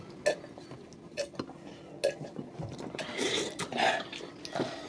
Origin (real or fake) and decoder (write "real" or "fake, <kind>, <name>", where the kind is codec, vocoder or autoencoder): real